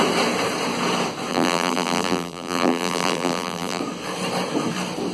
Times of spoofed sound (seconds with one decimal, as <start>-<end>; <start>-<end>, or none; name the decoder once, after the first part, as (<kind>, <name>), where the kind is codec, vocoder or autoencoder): 1.3-3.8 (vocoder, BigVGAN v2)